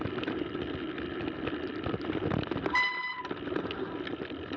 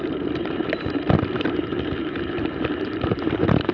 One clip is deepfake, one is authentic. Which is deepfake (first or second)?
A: second